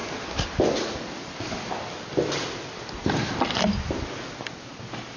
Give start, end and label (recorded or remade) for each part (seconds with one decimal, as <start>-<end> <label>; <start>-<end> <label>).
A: 0.0-5.2 recorded